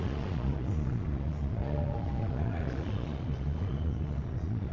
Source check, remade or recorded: remade